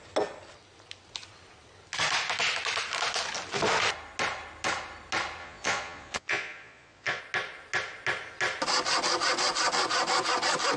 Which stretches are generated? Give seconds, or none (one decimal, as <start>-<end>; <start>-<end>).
5.4-7.2